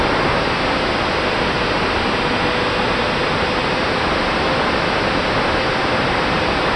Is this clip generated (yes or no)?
no